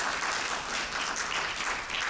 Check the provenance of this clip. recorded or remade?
recorded